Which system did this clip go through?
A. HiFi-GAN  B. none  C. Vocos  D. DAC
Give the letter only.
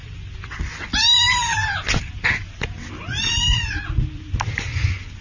B